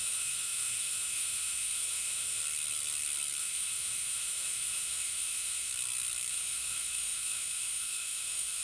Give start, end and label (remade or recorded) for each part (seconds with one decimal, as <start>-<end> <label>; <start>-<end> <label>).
0.0-2.4 remade; 2.4-3.4 recorded; 3.4-5.7 remade; 5.7-6.3 recorded; 6.3-8.6 remade